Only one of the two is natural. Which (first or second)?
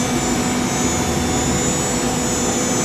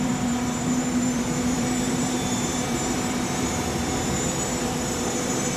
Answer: first